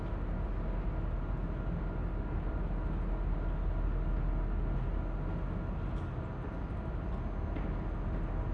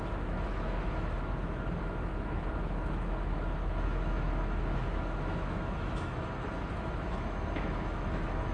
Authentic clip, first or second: first